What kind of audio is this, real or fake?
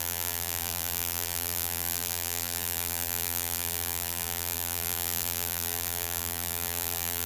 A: fake